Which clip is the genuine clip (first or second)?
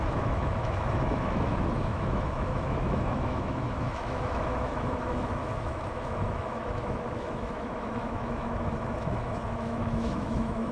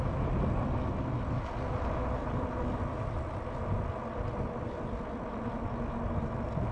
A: second